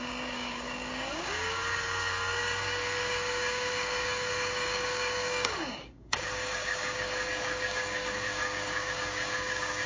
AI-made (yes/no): yes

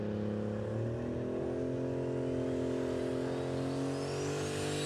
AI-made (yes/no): no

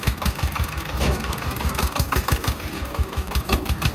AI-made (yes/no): yes